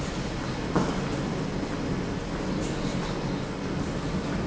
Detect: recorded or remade recorded